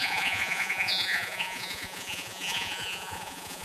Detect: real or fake fake